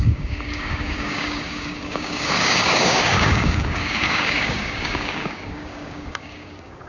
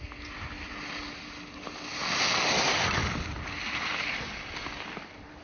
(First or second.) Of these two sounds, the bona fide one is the second